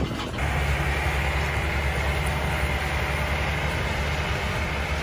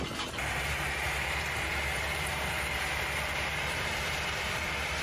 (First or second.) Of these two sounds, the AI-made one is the second